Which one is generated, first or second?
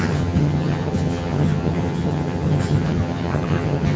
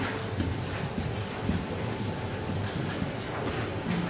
first